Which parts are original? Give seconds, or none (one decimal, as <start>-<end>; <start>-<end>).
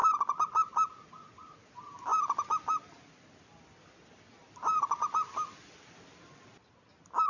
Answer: 0.0-7.3